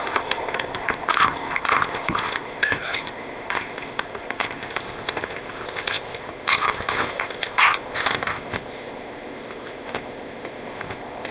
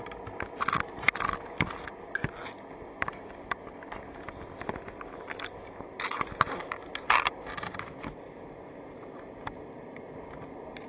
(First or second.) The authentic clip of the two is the second